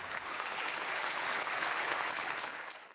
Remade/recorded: remade